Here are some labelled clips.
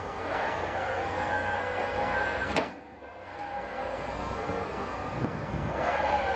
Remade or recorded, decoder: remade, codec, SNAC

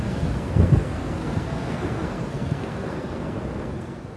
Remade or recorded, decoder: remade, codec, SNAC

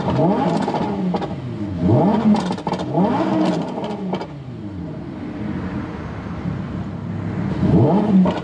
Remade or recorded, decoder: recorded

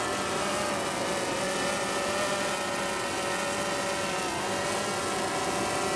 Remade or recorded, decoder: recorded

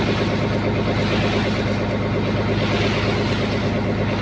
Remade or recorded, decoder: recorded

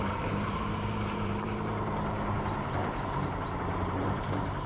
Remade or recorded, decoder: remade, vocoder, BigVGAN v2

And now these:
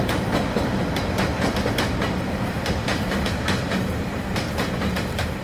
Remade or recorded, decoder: remade, vocoder, BigVGAN v2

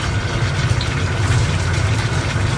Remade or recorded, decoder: remade, vocoder, BigVGAN v2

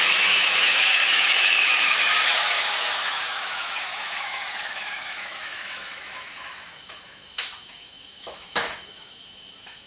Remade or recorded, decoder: remade, autoencoder, DAC-VAE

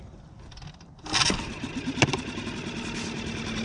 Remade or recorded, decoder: recorded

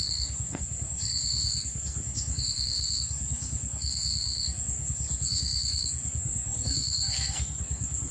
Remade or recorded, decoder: remade, codec, SNAC